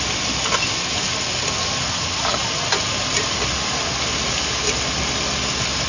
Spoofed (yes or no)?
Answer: no